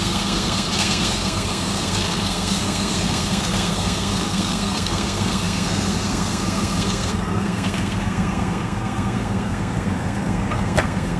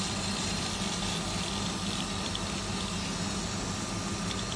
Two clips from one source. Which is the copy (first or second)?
first